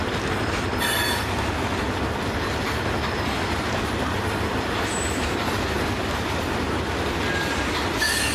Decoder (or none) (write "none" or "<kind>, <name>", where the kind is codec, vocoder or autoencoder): none